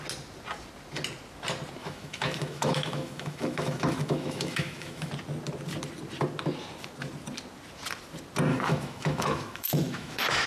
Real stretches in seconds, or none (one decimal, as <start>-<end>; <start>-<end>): 0.0-1.8; 5.1-8.5